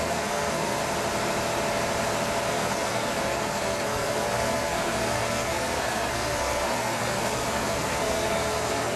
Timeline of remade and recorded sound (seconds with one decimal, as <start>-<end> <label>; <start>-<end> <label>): 0.0-0.8 remade; 0.8-2.5 recorded; 2.5-9.0 remade